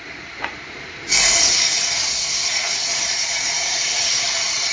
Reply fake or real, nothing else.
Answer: fake